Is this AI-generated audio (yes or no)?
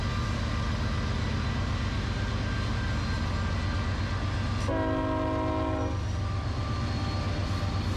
no